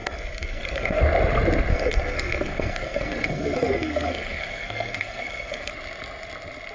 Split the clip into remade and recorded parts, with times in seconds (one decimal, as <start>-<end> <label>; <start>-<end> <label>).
0.0-1.0 remade; 1.0-1.7 recorded; 1.7-5.7 remade; 5.7-6.7 recorded

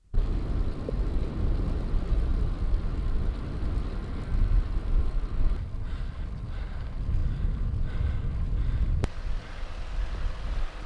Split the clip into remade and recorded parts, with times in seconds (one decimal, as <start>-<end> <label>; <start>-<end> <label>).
0.0-10.9 recorded